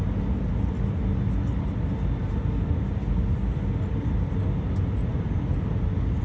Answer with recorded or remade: recorded